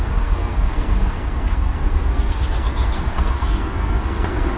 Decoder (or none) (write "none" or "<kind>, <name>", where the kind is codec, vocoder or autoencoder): codec, SNAC